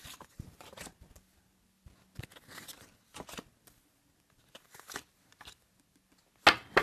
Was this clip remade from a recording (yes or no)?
no